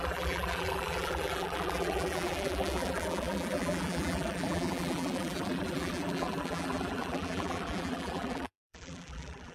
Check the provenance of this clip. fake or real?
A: fake